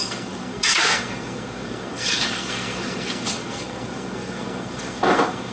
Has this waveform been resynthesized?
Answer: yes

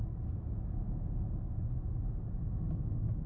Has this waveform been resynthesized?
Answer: no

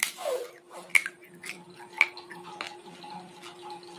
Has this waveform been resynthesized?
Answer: no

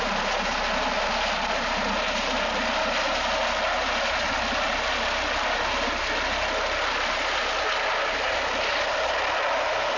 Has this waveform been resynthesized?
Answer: no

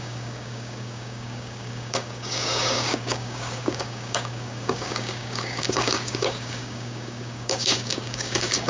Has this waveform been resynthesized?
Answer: yes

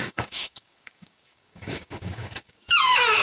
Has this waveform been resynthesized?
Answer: yes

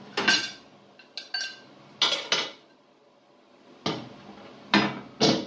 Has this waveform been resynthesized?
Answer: no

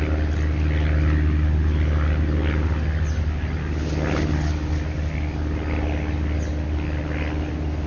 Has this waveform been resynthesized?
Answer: no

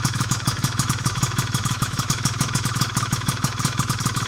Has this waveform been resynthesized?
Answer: yes